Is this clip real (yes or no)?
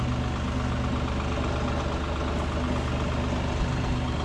yes